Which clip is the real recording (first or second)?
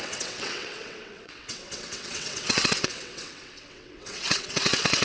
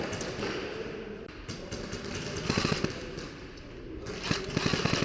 second